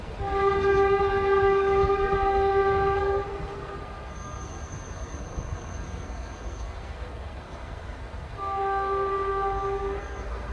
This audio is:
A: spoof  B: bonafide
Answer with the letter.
A